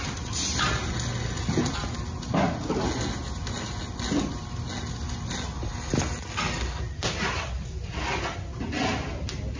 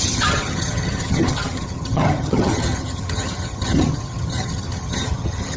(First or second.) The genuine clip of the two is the first